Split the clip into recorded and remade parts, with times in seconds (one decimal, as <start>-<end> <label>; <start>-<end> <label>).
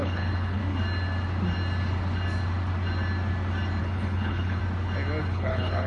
0.0-0.6 remade; 0.6-3.8 recorded; 3.8-4.6 remade; 4.6-5.2 recorded; 5.2-5.9 remade